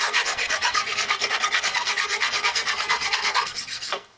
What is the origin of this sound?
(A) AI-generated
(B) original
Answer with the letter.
A